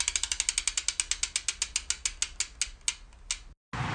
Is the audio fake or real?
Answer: real